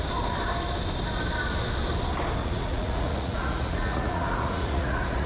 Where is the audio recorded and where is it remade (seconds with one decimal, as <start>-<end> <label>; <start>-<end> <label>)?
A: 0.0-2.4 recorded; 2.4-5.3 remade